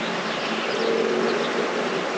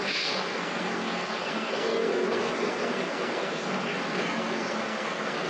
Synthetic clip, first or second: second